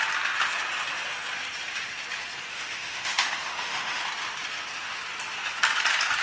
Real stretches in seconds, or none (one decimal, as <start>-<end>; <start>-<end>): 0.0-2.5; 4.0-6.2

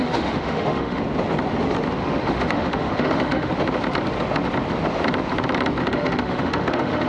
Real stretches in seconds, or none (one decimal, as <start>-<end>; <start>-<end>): 1.0-2.0; 3.5-5.8